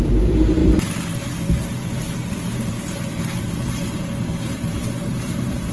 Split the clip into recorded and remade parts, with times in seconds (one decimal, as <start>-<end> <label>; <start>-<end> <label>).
0.0-0.6 remade; 0.6-4.0 recorded; 4.0-5.7 remade